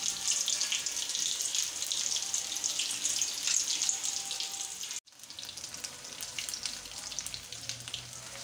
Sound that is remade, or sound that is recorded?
recorded